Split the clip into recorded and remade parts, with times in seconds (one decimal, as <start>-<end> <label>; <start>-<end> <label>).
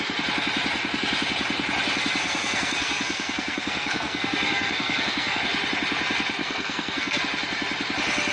0.0-2.2 recorded; 2.2-5.4 remade; 5.4-6.4 recorded; 6.4-7.2 remade; 7.2-8.3 recorded